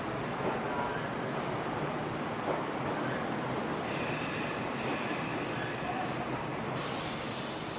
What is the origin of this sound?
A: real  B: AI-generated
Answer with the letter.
B